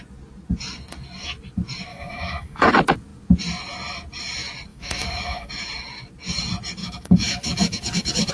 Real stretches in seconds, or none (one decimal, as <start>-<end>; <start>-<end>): 0.0-1.9; 2.7-4.7; 5.5-6.8